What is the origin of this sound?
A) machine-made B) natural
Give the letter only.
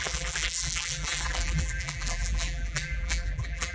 A